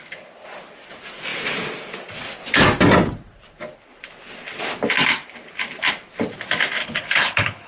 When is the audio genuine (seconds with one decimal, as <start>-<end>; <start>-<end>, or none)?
0.0-6.8